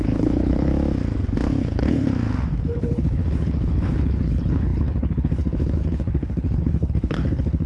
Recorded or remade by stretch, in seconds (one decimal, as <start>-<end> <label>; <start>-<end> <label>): 0.0-0.7 remade; 0.7-1.6 recorded; 1.6-2.1 remade; 2.1-2.7 recorded; 2.7-7.7 remade